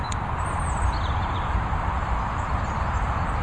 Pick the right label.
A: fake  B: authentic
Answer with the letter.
A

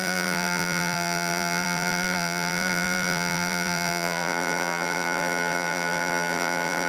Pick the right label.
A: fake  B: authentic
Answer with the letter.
A